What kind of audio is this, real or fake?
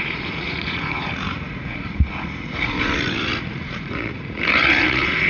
fake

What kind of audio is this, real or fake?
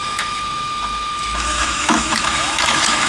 fake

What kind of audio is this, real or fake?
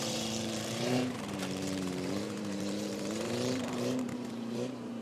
fake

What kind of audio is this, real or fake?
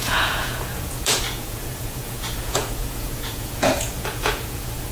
fake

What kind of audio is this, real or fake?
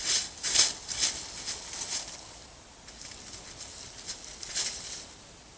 real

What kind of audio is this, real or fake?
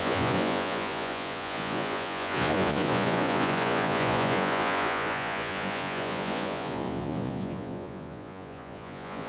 fake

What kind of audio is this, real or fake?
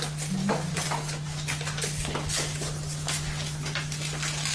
real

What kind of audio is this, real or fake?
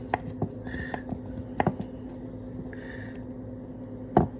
real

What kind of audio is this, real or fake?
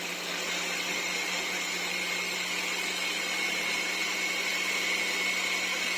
real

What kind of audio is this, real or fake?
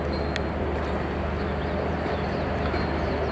real